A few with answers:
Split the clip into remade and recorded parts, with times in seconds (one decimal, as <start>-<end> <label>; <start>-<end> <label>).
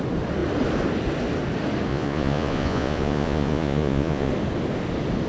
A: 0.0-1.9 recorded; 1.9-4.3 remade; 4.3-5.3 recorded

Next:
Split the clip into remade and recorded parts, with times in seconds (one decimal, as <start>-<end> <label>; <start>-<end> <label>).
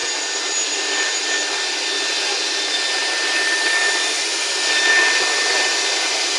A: 0.0-6.4 recorded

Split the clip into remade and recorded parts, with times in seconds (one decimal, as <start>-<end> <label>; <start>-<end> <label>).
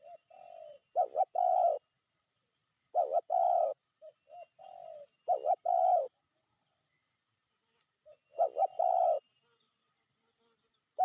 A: 0.0-11.0 recorded